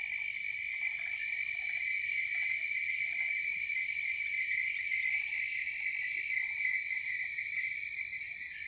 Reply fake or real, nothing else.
real